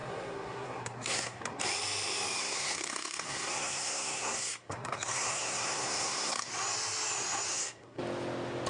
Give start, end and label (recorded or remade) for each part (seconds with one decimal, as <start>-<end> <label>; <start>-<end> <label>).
0.0-1.6 remade; 1.6-2.4 recorded; 2.4-6.5 remade; 6.5-7.5 recorded; 7.5-8.0 remade; 8.0-8.7 recorded